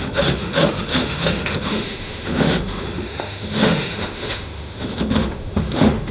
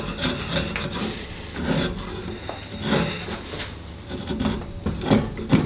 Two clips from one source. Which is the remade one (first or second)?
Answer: first